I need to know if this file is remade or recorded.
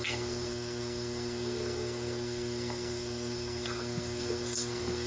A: remade